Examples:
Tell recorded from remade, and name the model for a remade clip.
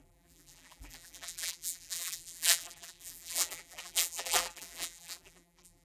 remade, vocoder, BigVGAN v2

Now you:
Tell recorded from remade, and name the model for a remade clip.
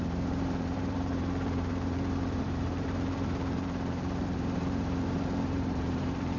remade, vocoder, BigVGAN v2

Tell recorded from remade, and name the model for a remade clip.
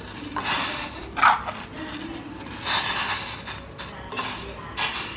recorded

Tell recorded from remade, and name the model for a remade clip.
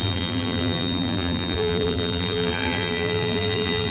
remade, vocoder, BigVGAN v2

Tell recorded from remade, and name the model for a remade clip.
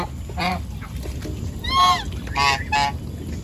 recorded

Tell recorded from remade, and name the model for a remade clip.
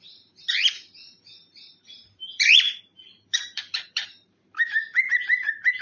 remade, vocoder, BigVGAN v2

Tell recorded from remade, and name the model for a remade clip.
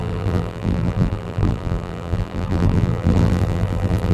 remade, vocoder, BigVGAN v2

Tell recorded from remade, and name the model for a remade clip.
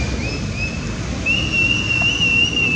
recorded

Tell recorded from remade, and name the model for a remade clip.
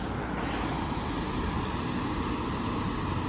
recorded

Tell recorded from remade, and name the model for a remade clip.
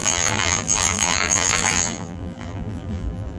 remade, vocoder, BigVGAN v2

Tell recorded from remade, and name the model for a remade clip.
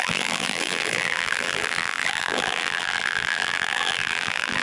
remade, vocoder, BigVGAN v2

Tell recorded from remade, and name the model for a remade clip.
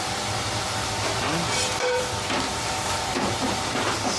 remade, vocoder, BigVGAN v2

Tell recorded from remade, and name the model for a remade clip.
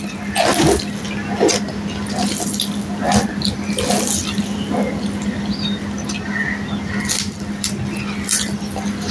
recorded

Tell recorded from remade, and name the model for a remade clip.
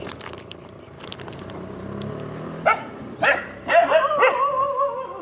remade, vocoder, BigVGAN v2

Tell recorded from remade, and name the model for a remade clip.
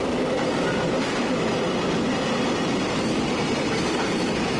recorded